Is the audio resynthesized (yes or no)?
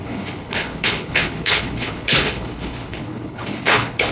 yes